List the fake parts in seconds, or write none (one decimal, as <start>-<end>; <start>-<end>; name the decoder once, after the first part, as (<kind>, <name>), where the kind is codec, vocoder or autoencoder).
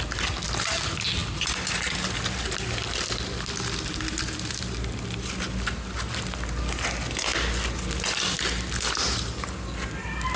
none